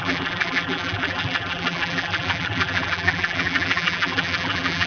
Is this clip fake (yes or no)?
yes